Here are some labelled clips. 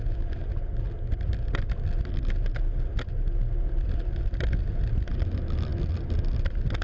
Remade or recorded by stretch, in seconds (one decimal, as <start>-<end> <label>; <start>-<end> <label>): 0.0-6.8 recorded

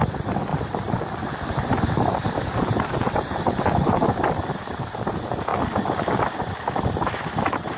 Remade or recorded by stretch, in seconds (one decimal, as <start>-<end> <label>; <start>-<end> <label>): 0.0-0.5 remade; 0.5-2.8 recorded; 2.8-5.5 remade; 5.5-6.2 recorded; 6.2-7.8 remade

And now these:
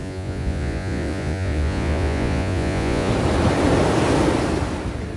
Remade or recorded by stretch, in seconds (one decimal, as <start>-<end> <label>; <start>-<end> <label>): 0.0-3.1 remade; 3.1-5.2 recorded

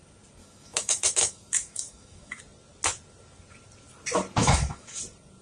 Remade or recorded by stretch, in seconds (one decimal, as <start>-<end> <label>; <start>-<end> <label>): 0.0-0.4 recorded; 0.4-2.4 remade; 2.4-4.4 recorded; 4.4-5.0 remade; 5.0-5.4 recorded